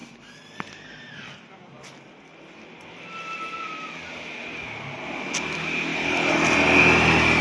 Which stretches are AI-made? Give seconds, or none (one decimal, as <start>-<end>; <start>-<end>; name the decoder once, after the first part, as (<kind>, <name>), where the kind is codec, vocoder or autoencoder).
none